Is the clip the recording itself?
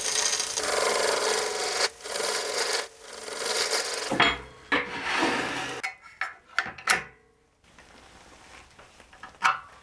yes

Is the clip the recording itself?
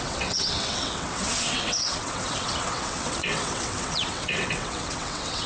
no